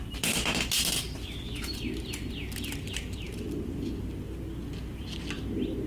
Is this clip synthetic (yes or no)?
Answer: no